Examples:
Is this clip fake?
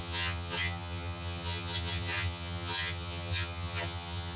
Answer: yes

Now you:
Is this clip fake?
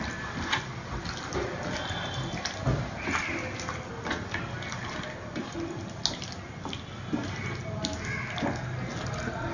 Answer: no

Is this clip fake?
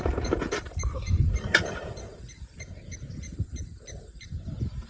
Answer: yes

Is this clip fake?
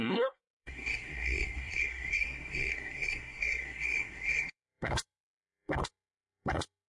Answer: yes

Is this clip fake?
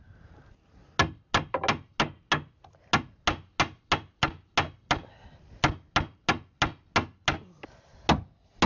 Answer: no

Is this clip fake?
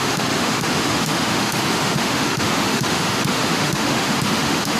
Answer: yes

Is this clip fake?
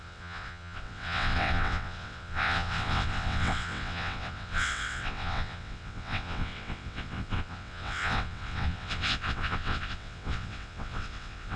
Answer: yes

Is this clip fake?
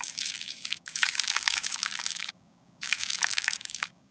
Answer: yes